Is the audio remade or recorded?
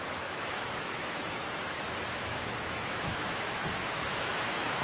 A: remade